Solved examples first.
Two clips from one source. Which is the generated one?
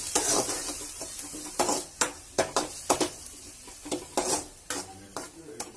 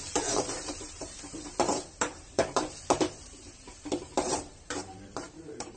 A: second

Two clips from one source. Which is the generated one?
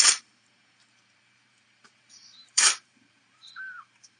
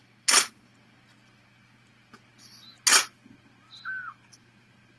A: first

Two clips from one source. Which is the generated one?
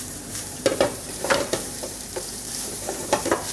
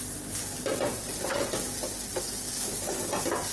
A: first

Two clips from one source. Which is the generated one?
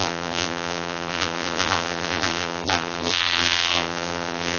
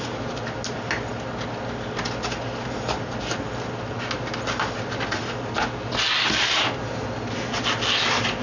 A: first